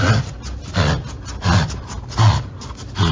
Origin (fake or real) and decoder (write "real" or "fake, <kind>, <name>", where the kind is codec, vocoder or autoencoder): real